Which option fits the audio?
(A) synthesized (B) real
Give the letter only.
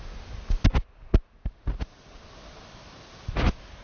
B